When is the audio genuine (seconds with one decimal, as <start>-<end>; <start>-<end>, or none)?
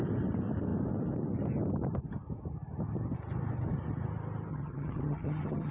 0.0-4.5